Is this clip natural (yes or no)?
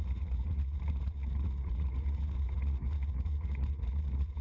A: no